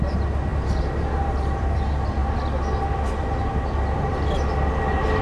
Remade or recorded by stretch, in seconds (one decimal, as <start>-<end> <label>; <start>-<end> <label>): 0.0-0.5 recorded; 0.5-1.7 remade; 1.7-5.2 recorded